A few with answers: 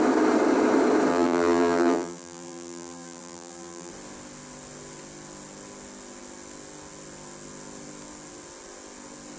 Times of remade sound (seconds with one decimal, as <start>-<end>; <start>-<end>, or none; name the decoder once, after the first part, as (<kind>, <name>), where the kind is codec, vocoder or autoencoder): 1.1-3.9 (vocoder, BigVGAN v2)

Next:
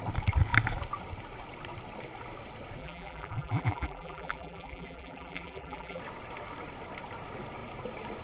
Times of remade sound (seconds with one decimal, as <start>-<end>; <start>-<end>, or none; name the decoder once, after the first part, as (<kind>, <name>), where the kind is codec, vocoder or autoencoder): 2.8-6.0 (vocoder, BigVGAN v2)

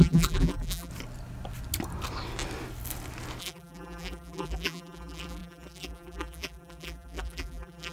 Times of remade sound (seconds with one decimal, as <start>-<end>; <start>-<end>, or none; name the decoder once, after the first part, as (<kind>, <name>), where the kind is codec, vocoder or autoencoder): 0.0-0.9 (vocoder, BigVGAN v2); 3.4-7.9

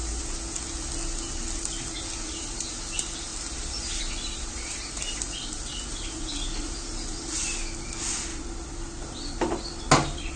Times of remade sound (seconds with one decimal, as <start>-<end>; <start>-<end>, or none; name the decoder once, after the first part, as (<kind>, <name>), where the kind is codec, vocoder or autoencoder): 3.3-6.2 (vocoder, BigVGAN v2); 8.3-9.8

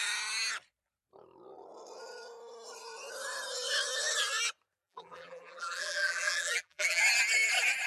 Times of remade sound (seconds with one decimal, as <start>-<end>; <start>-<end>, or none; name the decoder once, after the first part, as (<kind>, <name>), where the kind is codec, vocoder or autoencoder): 4.8-7.0 (vocoder, BigVGAN v2)